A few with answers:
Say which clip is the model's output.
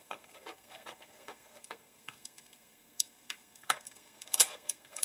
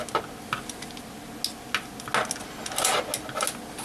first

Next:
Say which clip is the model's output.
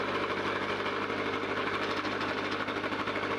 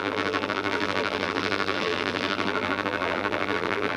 second